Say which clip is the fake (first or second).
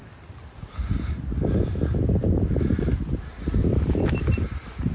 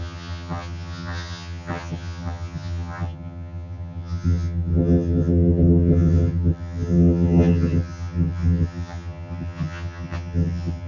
second